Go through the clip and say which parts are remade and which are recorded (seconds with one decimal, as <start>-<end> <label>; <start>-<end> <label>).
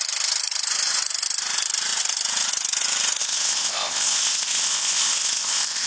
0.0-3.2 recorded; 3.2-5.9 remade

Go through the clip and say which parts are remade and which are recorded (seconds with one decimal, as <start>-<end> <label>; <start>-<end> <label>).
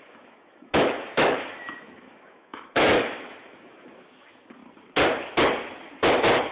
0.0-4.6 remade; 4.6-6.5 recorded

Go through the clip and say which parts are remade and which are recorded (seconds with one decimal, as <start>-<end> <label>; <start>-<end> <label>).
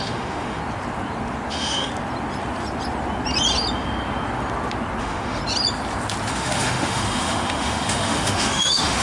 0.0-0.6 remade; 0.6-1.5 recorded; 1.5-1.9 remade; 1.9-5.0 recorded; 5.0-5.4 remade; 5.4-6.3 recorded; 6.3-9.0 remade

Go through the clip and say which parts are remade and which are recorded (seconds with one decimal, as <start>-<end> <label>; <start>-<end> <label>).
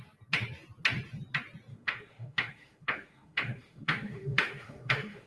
0.0-1.7 recorded; 1.7-5.3 remade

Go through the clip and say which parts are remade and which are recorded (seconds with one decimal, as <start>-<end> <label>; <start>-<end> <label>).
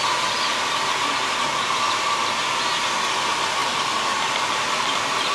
0.0-5.3 recorded